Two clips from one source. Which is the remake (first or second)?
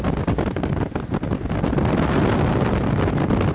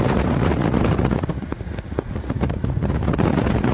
second